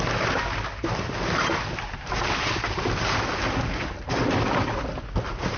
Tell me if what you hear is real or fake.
real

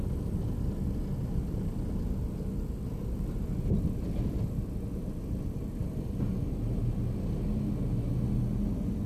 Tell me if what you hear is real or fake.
real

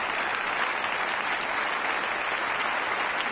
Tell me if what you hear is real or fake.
real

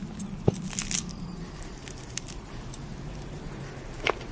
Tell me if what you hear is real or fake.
real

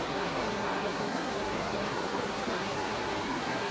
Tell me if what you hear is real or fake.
fake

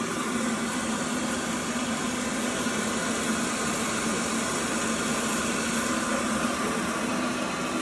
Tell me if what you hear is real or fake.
real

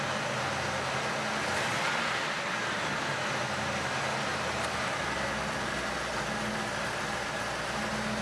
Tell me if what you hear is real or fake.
real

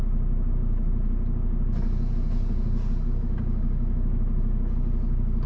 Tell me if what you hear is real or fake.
real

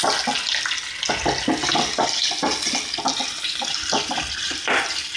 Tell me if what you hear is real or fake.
real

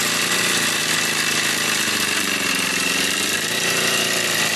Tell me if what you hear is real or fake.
fake